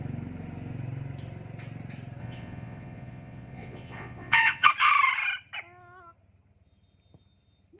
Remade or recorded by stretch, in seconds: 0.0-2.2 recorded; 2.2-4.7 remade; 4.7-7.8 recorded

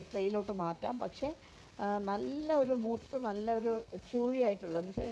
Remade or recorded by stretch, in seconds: 0.0-1.0 remade; 1.0-2.4 recorded; 2.4-5.1 remade